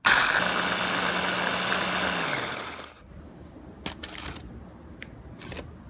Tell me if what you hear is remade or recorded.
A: recorded